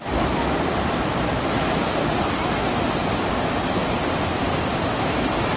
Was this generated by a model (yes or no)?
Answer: no